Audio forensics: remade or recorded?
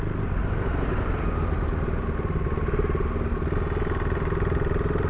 recorded